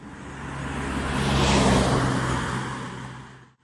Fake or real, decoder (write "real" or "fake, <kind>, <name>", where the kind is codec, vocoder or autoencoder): real